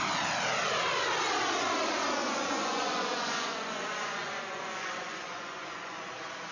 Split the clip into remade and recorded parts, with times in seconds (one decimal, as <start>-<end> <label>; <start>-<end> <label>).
0.0-2.2 recorded; 2.2-6.1 remade; 6.1-6.5 recorded